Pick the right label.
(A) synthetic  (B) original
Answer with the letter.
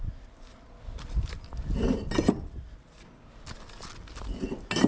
B